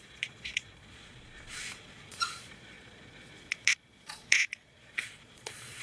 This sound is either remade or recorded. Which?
remade